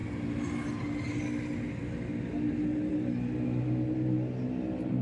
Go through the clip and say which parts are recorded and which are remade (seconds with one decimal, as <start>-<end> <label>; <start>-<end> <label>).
0.0-5.0 recorded